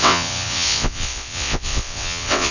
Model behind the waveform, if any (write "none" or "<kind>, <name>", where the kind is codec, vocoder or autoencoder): vocoder, WaveNeXt